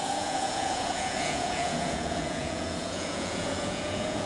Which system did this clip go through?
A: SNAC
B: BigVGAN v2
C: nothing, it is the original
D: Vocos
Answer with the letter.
D